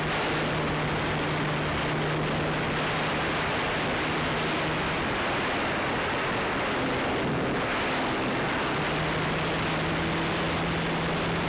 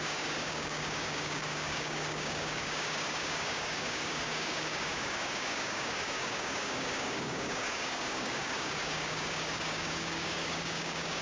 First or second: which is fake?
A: second